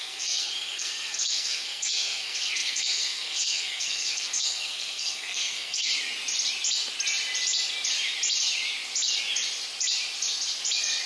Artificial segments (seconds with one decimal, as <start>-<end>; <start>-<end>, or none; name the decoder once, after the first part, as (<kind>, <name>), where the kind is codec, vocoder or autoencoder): 0.0-5.9 (codec, SNAC)